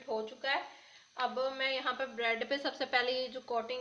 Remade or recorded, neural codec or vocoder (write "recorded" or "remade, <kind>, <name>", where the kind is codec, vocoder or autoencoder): recorded